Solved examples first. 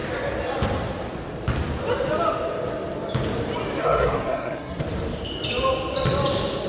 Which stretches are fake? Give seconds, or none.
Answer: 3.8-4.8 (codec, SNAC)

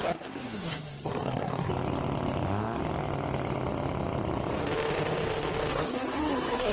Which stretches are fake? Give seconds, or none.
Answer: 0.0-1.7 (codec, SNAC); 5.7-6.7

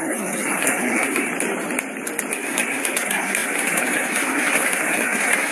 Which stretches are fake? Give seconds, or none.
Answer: 0.0-1.3 (codec, SNAC); 2.3-5.5

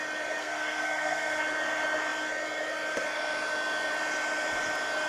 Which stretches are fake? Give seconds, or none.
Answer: 0.4-1.4 (codec, SNAC)

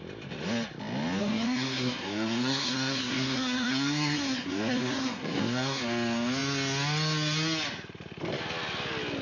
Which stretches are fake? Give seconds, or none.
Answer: 1.2-5.8 (codec, SNAC)

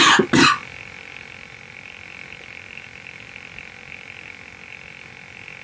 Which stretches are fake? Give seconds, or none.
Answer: none